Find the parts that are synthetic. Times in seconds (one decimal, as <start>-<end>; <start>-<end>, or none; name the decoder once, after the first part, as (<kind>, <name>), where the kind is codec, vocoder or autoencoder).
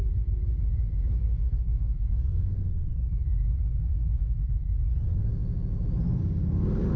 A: 1.2-2.5 (codec, SNAC); 3.8-4.5